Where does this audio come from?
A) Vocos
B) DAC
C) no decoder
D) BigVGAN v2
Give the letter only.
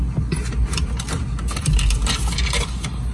C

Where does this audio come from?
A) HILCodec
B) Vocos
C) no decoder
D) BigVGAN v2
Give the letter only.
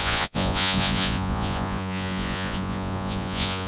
B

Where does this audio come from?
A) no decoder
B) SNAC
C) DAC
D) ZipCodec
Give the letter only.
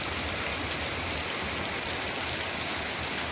A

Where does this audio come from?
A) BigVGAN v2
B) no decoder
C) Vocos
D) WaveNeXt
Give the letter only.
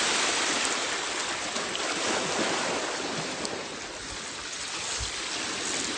A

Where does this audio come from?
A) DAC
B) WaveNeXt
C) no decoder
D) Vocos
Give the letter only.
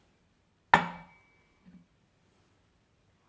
C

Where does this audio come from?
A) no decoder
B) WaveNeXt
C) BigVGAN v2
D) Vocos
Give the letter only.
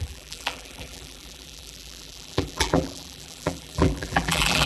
C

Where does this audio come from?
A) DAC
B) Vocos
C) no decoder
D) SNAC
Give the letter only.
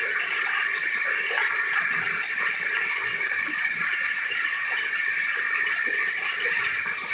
C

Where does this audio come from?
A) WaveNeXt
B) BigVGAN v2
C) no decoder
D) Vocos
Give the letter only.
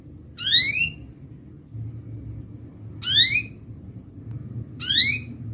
C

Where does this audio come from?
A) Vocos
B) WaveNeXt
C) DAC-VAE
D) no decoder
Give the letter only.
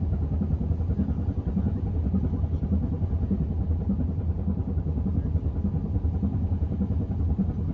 D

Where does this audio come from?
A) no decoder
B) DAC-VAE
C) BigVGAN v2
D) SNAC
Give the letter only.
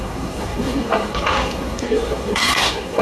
D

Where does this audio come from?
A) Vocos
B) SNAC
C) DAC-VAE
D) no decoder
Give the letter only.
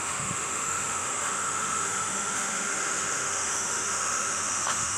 C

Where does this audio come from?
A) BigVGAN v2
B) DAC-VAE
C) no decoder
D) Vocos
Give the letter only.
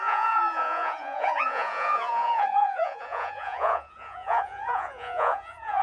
D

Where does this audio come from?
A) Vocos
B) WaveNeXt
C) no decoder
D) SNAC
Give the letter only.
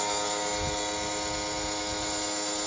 C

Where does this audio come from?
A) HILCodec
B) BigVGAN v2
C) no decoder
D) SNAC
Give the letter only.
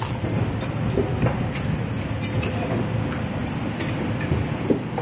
C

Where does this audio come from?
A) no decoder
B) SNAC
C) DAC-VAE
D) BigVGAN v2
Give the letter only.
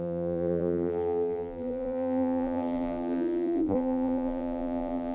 D